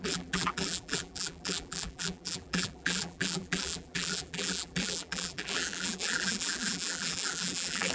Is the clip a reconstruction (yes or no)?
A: yes